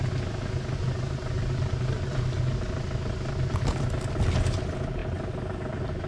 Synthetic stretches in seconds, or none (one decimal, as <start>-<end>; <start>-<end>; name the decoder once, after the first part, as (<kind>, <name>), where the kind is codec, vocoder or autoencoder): none